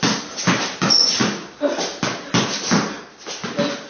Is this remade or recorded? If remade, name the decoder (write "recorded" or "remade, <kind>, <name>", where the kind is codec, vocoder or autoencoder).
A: recorded